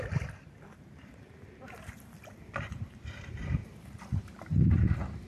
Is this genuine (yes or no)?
no